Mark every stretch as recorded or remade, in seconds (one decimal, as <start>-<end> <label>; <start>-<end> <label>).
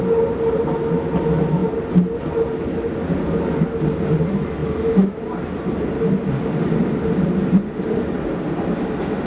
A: 0.0-9.3 recorded